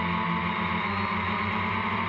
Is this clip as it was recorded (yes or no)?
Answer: yes